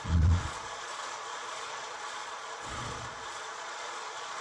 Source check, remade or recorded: remade